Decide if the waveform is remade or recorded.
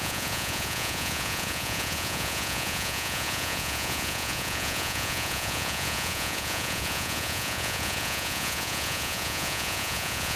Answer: remade